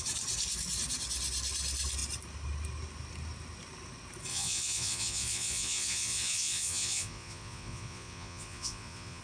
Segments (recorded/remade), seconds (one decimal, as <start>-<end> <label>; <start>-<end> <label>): 0.0-4.3 recorded; 4.3-9.2 remade